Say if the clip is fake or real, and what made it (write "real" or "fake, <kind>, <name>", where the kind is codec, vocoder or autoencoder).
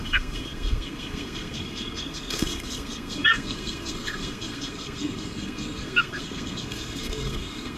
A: fake, codec, SNAC